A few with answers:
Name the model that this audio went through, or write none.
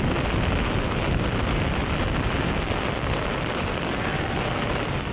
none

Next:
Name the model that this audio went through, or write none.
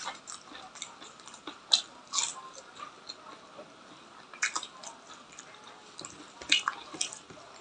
none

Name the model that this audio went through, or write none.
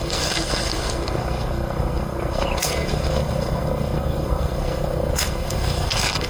codec, SNAC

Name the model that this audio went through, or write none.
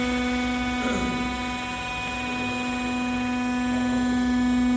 none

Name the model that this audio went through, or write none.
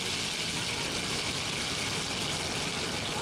none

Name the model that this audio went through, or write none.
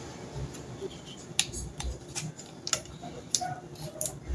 none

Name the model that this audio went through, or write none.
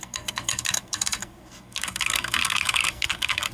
codec, SNAC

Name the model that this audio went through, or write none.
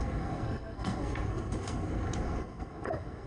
codec, SNAC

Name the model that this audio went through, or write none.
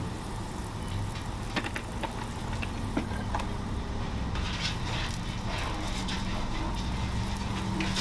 none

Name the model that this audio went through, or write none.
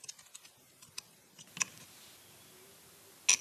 none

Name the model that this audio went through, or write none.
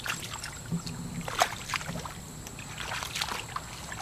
none